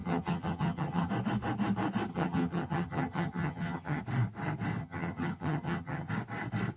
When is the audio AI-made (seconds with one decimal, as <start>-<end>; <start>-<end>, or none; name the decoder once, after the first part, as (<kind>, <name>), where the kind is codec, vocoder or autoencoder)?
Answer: 0.0-1.1 (vocoder, HiFi-GAN); 2.1-4.0; 4.8-6.1